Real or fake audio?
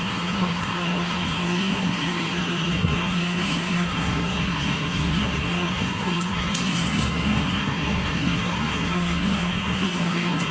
fake